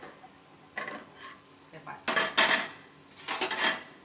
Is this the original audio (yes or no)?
yes